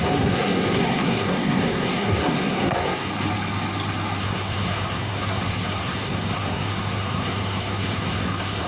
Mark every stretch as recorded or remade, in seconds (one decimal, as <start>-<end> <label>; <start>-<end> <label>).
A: 0.0-3.1 remade; 3.1-4.2 recorded; 4.2-8.7 remade

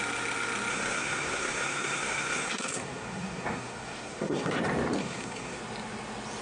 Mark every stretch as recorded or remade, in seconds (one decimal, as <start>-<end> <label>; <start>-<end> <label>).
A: 0.0-0.7 recorded; 0.7-4.5 remade; 4.5-5.0 recorded; 5.0-5.6 remade; 5.6-6.4 recorded